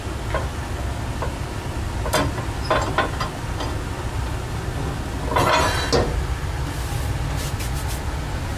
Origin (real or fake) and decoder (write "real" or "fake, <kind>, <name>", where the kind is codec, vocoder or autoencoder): real